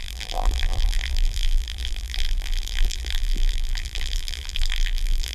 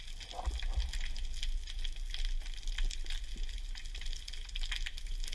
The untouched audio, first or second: second